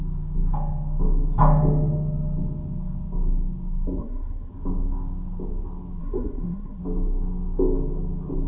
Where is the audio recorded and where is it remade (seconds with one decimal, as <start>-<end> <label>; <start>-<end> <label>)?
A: 0.0-4.0 recorded; 4.0-4.5 remade; 4.5-6.0 recorded; 6.0-6.8 remade; 6.8-8.5 recorded